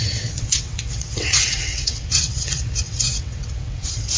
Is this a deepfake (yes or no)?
yes